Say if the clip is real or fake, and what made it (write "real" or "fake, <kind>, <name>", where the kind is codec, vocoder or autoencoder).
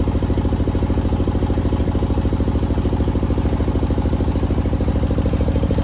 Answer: real